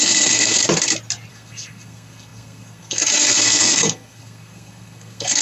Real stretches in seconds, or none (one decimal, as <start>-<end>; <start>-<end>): 0.6-1.3